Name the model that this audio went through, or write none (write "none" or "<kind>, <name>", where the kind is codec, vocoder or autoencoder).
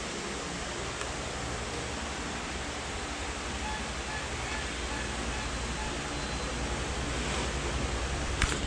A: none